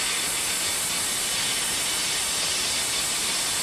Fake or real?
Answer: real